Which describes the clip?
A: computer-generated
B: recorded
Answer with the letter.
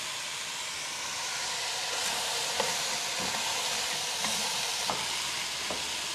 B